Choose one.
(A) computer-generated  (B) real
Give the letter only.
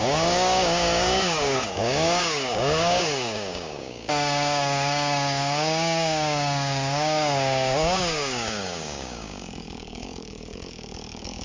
A